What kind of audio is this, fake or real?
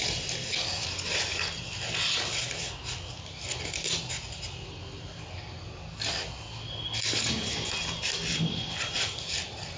real